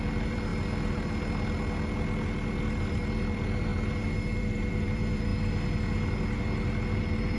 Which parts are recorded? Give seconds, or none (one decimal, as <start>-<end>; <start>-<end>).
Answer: 0.5-2.6; 3.7-4.4; 5.3-7.0